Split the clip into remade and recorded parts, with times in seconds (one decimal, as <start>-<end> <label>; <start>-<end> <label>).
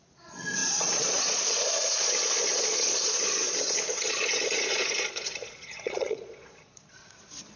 0.0-7.6 remade